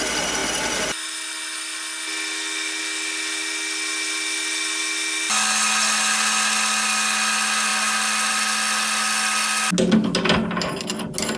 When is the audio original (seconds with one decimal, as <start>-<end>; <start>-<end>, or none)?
0.0-11.4